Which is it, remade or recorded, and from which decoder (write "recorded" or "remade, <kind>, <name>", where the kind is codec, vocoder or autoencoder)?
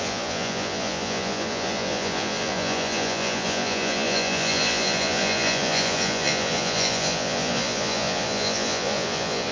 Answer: remade, vocoder, Vocos